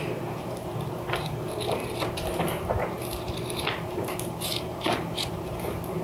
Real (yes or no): no